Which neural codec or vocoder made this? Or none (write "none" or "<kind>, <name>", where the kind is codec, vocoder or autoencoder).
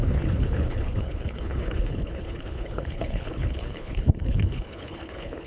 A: codec, HILCodec